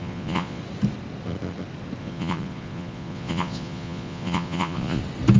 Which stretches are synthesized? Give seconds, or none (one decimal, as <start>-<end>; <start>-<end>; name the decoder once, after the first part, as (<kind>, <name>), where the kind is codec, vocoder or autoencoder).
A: 0.0-0.6 (vocoder, Vocos); 2.0-5.0